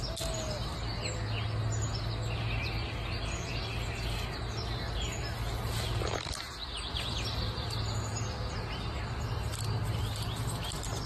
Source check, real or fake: real